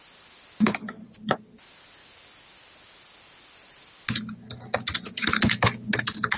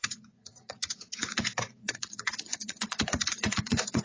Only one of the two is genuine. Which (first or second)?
first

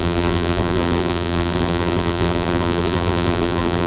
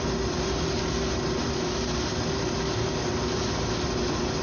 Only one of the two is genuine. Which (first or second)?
second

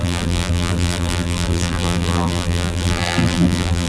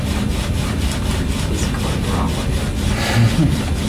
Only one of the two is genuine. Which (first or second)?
second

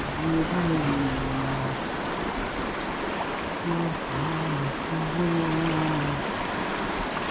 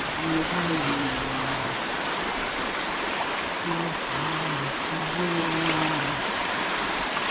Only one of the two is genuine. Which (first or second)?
first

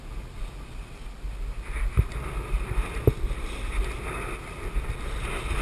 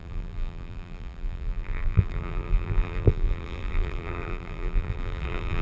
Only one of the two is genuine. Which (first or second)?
first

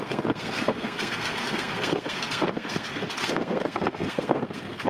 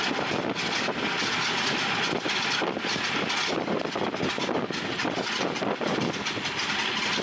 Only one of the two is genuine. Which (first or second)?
second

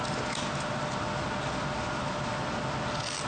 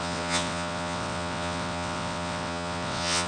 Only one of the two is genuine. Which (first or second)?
first